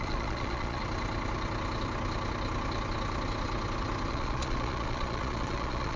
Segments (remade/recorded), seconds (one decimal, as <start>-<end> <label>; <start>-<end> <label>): 0.0-0.8 remade; 0.8-4.1 recorded; 4.1-6.0 remade